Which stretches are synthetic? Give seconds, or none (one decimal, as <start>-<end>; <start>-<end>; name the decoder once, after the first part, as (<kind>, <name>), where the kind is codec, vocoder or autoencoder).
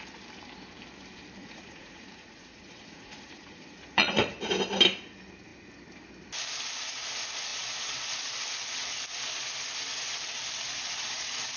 1.4-4.4 (vocoder, Vocos)